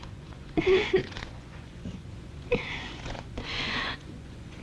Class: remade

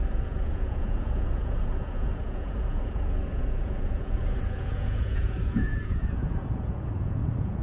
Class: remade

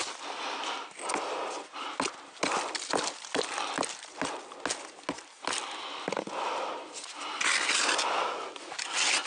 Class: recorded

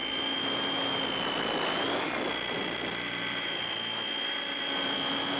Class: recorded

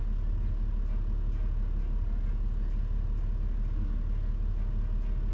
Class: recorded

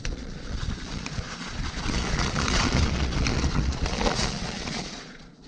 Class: remade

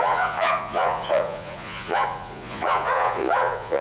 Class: remade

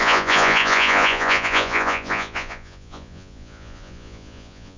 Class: remade